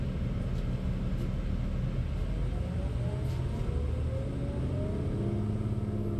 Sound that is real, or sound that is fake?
real